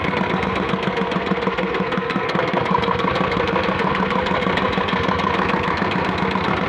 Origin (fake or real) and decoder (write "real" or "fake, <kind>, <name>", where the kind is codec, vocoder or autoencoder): fake, codec, SNAC